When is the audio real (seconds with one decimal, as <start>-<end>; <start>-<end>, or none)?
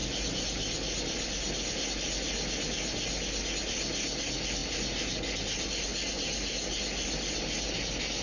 0.0-8.2